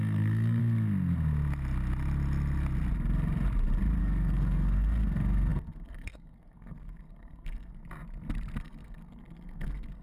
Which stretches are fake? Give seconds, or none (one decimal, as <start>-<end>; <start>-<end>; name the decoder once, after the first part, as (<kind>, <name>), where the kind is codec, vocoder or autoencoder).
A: 0.0-0.6 (codec, SNAC); 4.0-7.8; 8.6-10.0